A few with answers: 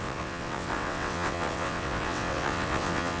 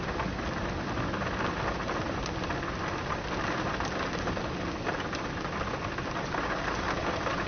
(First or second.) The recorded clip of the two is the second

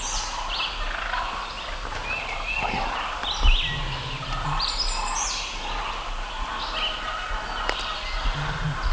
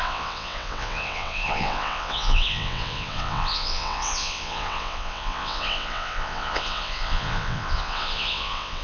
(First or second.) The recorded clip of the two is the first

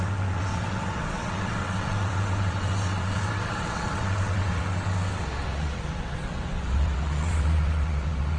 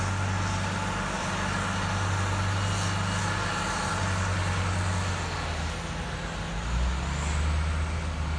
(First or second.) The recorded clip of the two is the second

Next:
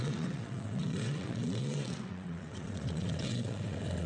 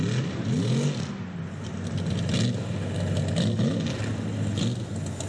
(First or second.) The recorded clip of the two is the second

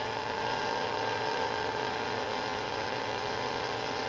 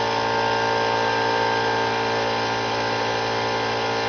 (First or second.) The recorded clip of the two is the second